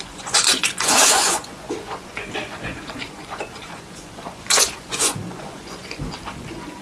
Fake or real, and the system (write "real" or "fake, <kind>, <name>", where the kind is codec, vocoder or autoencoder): fake, vocoder, Vocos